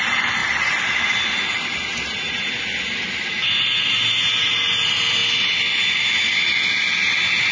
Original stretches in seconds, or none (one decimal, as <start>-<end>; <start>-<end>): 0.0-7.5